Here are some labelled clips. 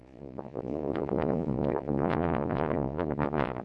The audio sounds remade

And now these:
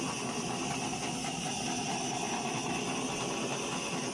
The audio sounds recorded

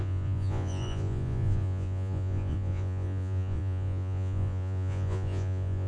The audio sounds remade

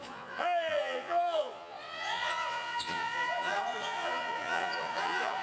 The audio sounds remade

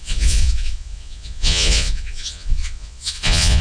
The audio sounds remade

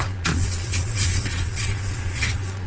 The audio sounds remade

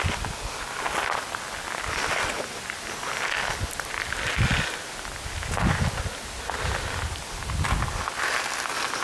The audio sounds recorded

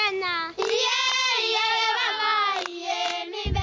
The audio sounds recorded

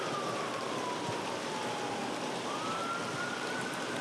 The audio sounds recorded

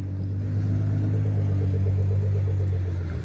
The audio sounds recorded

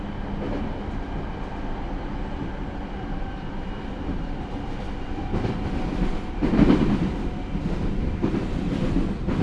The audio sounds recorded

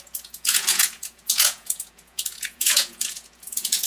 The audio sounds remade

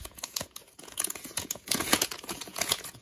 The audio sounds remade